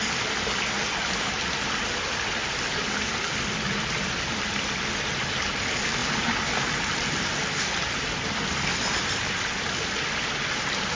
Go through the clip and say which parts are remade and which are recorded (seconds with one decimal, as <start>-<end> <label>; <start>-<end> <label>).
0.0-11.0 recorded